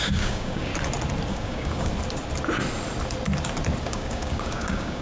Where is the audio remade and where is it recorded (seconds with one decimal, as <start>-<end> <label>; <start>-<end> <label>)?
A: 0.0-0.7 remade; 0.7-1.3 recorded; 1.3-1.9 remade; 1.9-3.8 recorded; 3.8-5.0 remade